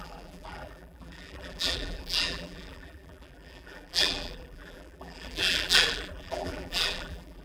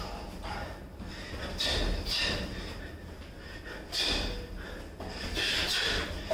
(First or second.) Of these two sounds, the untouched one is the second